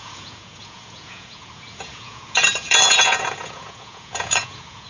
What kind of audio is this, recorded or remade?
remade